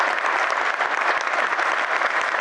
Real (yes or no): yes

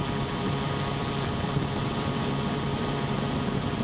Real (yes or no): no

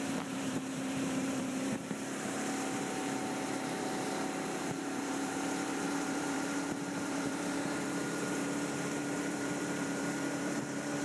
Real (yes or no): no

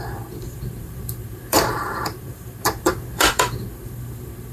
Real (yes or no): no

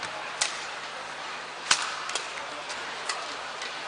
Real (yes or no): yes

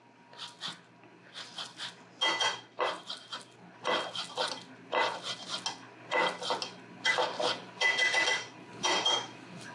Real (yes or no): yes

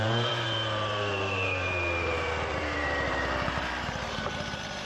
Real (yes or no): no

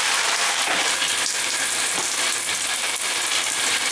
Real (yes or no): yes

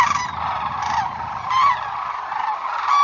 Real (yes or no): no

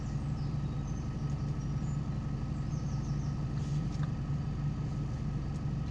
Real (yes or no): yes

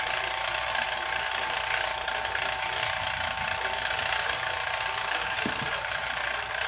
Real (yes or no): no